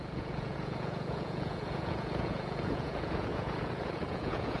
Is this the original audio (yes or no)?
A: no